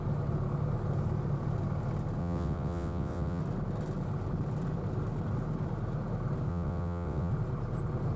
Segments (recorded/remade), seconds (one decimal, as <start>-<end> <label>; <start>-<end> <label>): 0.0-2.2 recorded; 2.2-3.4 remade; 3.4-6.5 recorded; 6.5-7.3 remade; 7.3-8.2 recorded